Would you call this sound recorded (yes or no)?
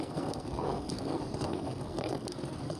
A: no